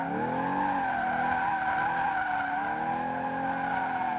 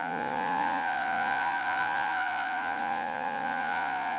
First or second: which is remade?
second